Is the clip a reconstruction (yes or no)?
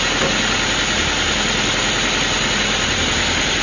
no